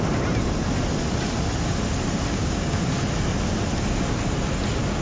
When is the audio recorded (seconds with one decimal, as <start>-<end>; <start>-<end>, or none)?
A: 0.0-2.3; 2.8-5.0